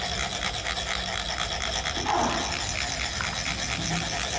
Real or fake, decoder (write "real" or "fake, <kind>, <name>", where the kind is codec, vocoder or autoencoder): real